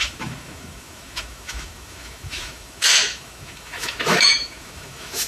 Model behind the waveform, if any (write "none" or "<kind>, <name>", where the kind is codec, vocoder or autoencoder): autoencoder, DAC-VAE